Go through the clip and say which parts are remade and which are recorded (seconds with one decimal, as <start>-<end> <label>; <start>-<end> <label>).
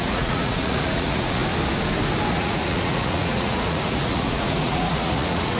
0.0-1.4 remade; 1.4-2.3 recorded; 2.3-5.6 remade